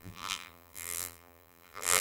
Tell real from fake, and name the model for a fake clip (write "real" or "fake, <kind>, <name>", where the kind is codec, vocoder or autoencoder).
fake, vocoder, BigVGAN v2